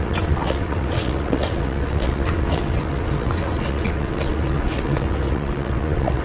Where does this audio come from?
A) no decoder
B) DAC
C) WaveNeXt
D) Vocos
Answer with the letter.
C